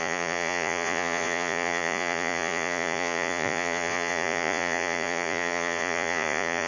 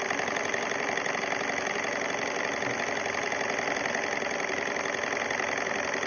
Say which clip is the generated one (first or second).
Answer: first